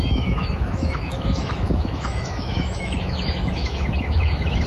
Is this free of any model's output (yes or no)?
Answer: no